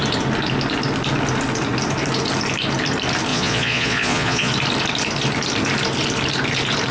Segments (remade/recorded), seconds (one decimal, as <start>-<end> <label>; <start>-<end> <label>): 0.0-3.3 recorded; 3.3-4.5 remade; 4.5-6.9 recorded